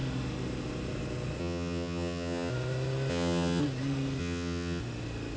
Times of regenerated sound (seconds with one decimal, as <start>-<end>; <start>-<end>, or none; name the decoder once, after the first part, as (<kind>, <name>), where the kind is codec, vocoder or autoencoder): 1.4-2.5 (vocoder, HiFi-GAN); 3.1-3.6; 4.2-4.8